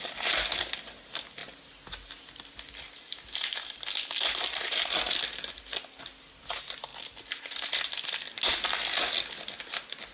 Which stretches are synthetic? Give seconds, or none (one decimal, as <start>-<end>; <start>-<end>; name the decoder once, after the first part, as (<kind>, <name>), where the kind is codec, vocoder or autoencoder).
none